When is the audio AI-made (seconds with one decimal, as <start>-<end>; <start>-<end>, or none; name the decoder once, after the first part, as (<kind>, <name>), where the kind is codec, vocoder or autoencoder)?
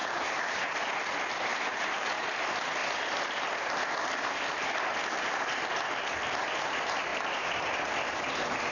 0.0-0.7 (vocoder, BigVGAN v2); 1.5-2.4; 7.1-7.6